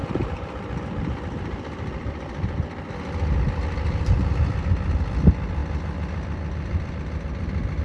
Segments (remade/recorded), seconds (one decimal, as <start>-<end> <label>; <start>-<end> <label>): 0.0-4.7 remade; 4.7-5.6 recorded; 5.6-6.9 remade; 6.9-7.8 recorded